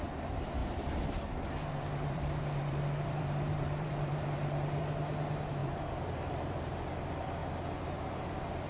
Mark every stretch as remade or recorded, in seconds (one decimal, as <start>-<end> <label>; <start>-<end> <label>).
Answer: 0.0-0.6 recorded; 0.6-4.8 remade; 4.8-5.6 recorded; 5.6-6.9 remade; 6.9-8.7 recorded